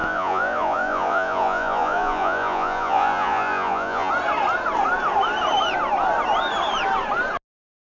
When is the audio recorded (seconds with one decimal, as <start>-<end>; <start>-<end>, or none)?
4.1-7.9